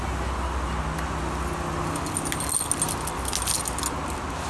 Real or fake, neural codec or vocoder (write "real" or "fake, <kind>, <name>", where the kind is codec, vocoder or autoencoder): real